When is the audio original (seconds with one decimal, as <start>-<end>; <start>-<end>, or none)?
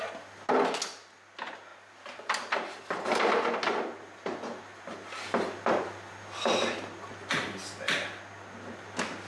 0.0-1.7; 2.8-9.3